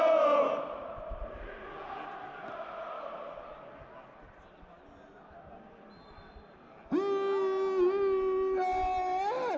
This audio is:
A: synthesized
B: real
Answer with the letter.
B